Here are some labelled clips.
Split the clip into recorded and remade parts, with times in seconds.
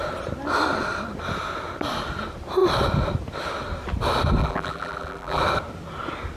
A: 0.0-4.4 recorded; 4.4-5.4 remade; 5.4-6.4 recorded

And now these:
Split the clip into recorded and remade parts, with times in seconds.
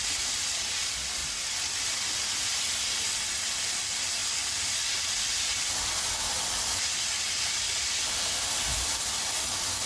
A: 0.0-9.9 recorded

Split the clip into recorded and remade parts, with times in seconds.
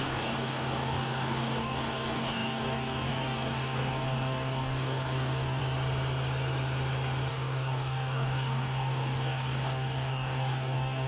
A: 0.0-5.6 remade; 5.6-7.3 recorded; 7.3-11.1 remade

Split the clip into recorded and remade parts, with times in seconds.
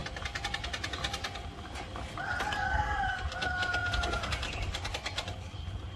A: 0.0-3.8 recorded; 3.8-4.3 remade; 4.3-6.0 recorded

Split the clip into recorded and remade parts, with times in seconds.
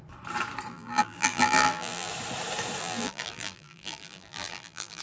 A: 0.0-0.7 recorded; 0.7-2.1 remade; 2.1-2.8 recorded; 2.8-5.0 remade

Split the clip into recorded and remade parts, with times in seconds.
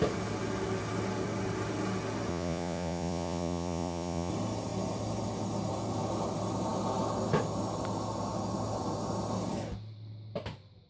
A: 0.0-2.3 recorded; 2.3-4.3 remade; 4.3-10.9 recorded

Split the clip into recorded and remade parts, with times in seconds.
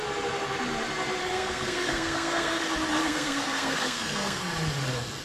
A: 0.0-1.2 recorded; 1.2-2.6 remade; 2.6-3.0 recorded; 3.0-4.4 remade; 4.4-5.2 recorded